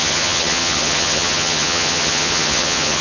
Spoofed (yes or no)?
yes